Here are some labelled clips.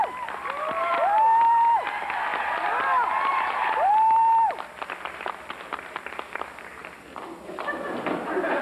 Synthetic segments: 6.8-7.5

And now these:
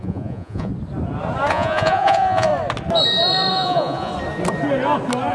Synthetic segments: 0.0-0.7; 1.5-2.5; 3.5-4.1

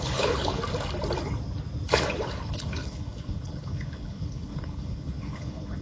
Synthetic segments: 0.0-0.6; 2.2-5.8